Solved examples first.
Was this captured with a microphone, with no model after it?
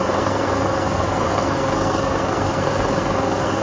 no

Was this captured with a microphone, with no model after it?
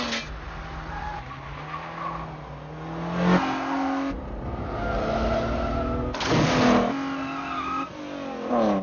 yes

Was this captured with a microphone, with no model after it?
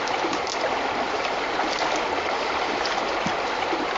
yes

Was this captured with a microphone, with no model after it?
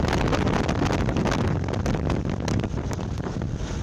yes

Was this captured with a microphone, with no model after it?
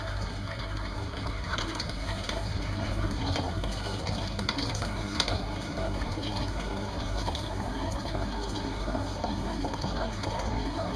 no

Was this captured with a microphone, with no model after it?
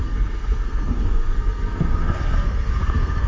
no